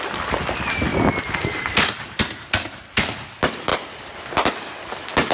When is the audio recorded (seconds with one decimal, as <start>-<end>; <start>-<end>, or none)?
0.0-5.3